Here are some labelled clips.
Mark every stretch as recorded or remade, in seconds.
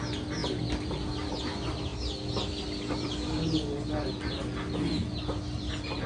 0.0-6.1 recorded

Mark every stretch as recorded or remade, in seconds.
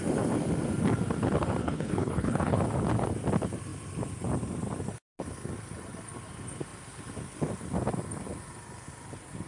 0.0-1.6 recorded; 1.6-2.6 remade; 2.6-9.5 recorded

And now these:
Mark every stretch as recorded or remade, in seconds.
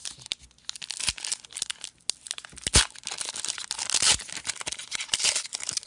0.0-5.9 recorded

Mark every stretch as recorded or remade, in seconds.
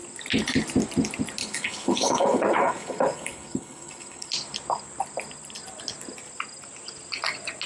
0.0-1.4 recorded; 1.4-4.3 remade; 4.3-7.7 recorded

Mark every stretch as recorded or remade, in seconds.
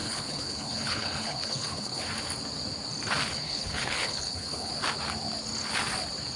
0.0-2.0 remade; 2.0-3.3 recorded; 3.3-4.7 remade; 4.7-6.4 recorded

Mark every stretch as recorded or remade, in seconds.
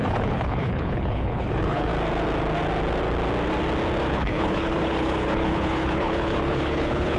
0.0-1.9 remade; 1.9-4.1 recorded; 4.1-7.2 remade